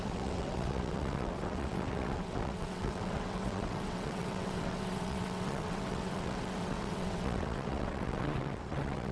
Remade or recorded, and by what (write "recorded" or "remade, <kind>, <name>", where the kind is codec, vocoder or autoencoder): remade, vocoder, WaveNeXt